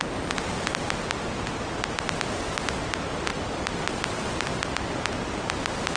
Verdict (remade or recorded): recorded